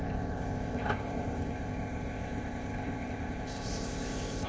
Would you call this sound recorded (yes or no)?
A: no